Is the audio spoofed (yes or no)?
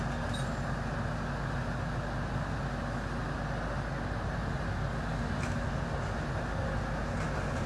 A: no